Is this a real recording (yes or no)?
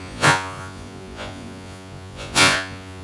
no